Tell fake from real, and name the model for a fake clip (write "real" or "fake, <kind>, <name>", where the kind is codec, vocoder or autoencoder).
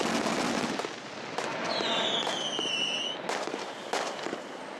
real